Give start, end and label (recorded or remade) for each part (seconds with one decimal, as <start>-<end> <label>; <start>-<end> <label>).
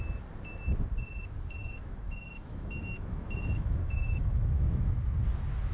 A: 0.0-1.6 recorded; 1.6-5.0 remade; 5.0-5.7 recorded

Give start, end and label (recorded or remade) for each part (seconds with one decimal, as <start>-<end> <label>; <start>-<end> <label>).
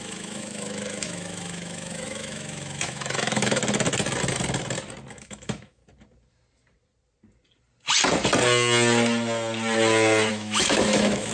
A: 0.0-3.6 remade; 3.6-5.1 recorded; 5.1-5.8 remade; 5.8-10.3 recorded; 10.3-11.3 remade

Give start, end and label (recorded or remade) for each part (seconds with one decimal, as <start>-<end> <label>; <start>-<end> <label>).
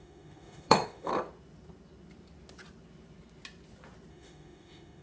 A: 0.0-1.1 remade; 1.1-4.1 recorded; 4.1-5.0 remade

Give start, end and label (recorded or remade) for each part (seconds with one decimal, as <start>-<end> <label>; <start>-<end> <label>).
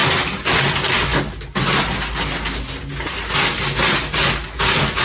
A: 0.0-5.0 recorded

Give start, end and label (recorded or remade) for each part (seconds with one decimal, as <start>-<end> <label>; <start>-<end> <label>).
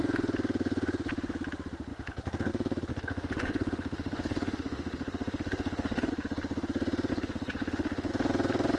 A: 0.0-2.9 recorded; 2.9-6.1 remade; 6.1-7.1 recorded; 7.1-8.1 remade; 8.1-8.8 recorded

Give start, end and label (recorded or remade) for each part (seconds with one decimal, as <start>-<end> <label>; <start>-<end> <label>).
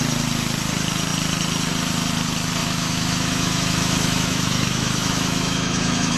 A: 0.0-2.6 recorded; 2.6-6.2 remade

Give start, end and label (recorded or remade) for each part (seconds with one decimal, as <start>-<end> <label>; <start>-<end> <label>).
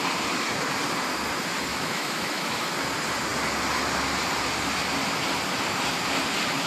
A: 0.0-1.7 recorded; 1.7-2.6 remade; 2.6-6.7 recorded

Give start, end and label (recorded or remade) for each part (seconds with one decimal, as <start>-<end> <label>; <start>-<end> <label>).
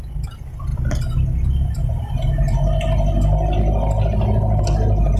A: 0.0-5.2 recorded